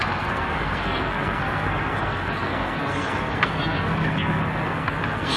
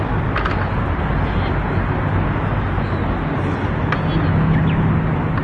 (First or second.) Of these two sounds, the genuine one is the second